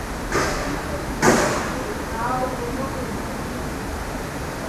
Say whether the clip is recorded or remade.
recorded